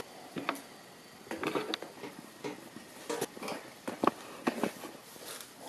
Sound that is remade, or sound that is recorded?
recorded